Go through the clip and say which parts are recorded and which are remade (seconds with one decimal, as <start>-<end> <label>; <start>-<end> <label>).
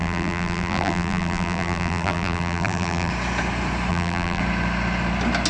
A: 0.0-3.1 remade; 3.1-3.9 recorded; 3.9-4.4 remade; 4.4-5.5 recorded